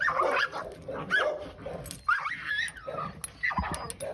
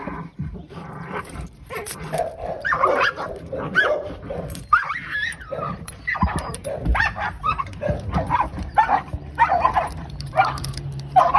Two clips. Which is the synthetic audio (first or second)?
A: second